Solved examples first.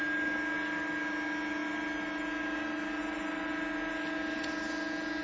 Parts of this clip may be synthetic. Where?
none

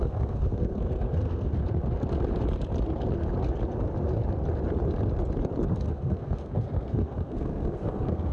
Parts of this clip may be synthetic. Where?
0.0-1.6; 5.7-8.3

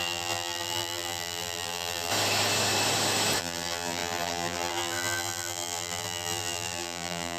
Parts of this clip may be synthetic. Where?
0.0-2.1; 3.4-7.4

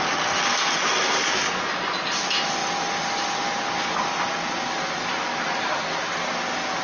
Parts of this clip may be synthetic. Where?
none

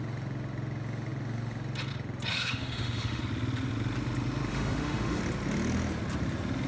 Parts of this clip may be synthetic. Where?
2.3-3.2; 4.5-5.2

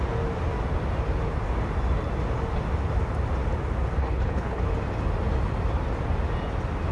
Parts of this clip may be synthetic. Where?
4.0-4.6